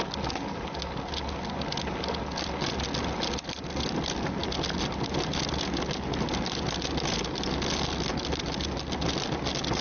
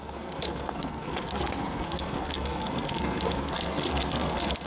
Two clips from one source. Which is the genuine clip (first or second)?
first